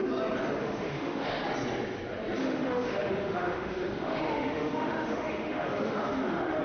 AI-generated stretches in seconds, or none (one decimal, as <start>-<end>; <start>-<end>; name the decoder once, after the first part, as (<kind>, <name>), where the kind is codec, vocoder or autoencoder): 0.6-1.4 (autoencoder, DAC-VAE); 2.4-6.6